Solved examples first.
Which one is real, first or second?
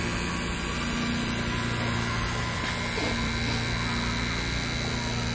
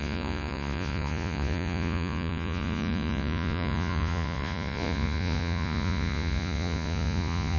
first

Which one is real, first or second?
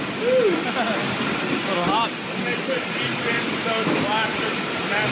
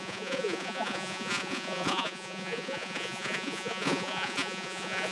first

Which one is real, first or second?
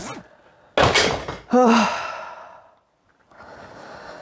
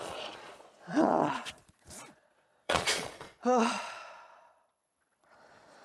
first